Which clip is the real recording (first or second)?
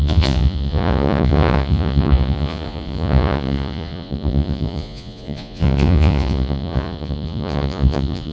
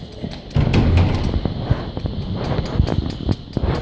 second